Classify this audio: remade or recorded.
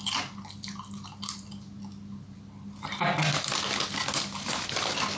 recorded